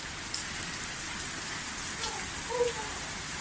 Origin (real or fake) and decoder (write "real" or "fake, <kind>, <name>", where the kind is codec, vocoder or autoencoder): real